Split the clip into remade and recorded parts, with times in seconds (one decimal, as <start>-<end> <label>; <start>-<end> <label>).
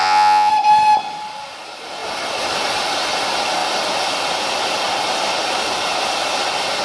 0.0-0.5 remade; 0.5-6.8 recorded